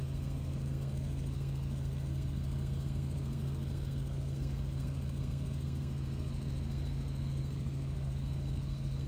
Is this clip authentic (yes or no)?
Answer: no